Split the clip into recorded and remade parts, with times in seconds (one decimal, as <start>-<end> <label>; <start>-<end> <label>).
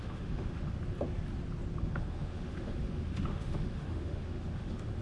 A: 0.0-0.8 remade; 0.8-1.8 recorded; 1.8-5.0 remade